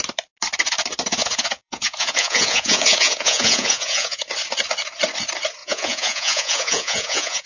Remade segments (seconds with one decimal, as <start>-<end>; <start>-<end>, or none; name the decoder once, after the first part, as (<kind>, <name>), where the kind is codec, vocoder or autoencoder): 1.1-4.3 (vocoder, Vocos); 5.6-7.5